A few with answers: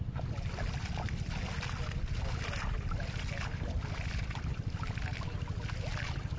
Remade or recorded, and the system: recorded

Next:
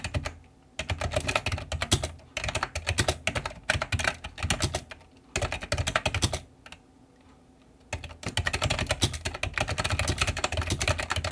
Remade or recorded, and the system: recorded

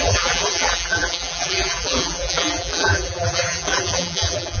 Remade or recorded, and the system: remade, vocoder, BigVGAN v2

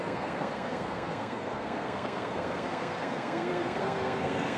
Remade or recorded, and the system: remade, codec, SNAC